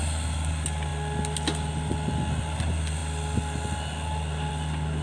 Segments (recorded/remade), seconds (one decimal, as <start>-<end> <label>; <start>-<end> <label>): 0.0-5.0 recorded

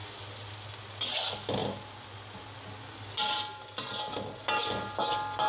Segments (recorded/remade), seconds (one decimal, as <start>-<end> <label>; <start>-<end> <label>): 0.0-5.5 recorded